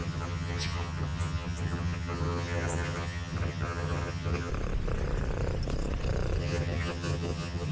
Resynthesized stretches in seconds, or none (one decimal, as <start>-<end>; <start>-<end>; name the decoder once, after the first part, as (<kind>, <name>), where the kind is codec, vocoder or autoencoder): 0.0-4.5 (vocoder, HiFi-GAN); 6.4-7.7